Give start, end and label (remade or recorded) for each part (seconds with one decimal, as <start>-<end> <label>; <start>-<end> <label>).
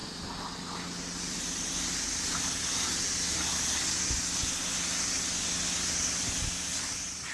0.0-7.3 recorded